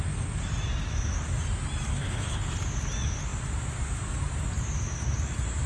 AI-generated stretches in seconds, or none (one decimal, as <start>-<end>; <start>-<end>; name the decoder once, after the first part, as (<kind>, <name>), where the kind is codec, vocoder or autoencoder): 1.9-2.5 (codec, HILCodec)